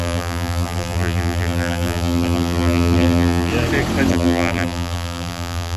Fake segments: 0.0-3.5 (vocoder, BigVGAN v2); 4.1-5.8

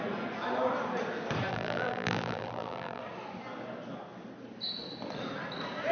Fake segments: 1.5-3.0 (vocoder, BigVGAN v2)

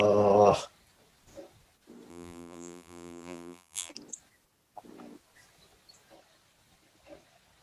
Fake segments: 2.1-3.9 (vocoder, BigVGAN v2)